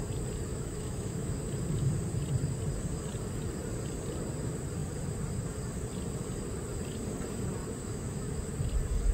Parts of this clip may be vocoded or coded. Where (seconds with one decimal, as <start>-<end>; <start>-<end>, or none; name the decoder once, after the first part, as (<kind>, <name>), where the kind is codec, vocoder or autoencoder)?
0.5-1.4 (autoencoder, DAC-VAE); 7.8-8.4